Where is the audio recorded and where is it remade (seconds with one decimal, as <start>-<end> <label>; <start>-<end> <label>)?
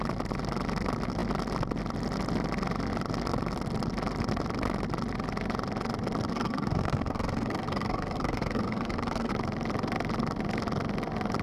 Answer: 0.0-6.3 recorded; 6.3-9.3 remade; 9.3-11.4 recorded